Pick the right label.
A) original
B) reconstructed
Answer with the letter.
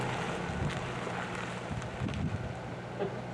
A